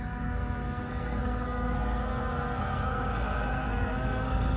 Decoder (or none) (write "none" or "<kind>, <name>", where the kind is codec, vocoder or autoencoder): codec, SNAC